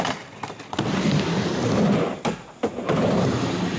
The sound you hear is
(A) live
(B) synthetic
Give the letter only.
A